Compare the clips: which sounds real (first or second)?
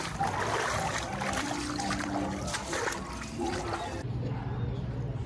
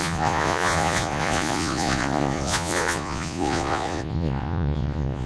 first